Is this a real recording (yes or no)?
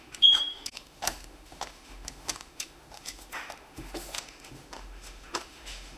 no